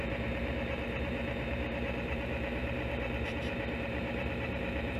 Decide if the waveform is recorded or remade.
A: remade